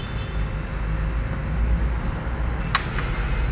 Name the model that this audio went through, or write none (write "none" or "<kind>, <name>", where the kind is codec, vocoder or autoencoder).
none